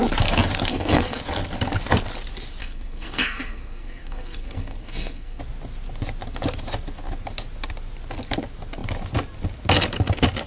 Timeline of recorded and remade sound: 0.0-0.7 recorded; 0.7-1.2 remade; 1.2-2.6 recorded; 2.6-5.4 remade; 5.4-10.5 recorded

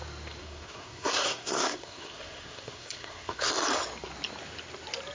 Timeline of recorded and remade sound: 0.0-0.4 recorded; 0.4-3.5 remade; 3.5-5.1 recorded

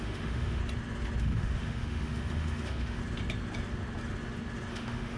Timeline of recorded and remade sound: 0.0-0.6 remade; 0.6-1.2 recorded; 1.2-3.0 remade; 3.0-4.7 recorded; 4.7-5.2 remade

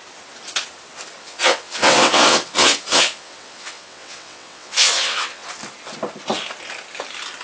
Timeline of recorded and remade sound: 0.0-1.2 recorded; 1.2-5.5 remade; 5.5-7.4 recorded

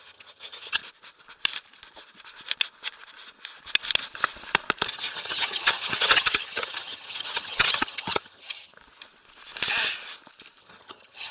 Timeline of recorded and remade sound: 0.0-0.8 remade; 0.8-4.9 recorded; 4.9-8.7 remade; 8.7-10.6 recorded; 10.6-11.3 remade

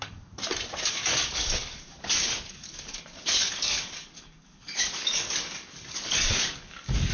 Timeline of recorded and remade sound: 0.0-0.4 remade; 0.4-0.9 recorded; 0.9-7.1 remade